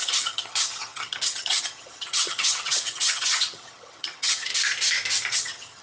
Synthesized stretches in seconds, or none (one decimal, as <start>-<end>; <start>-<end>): 0.0-4.5; 5.3-5.8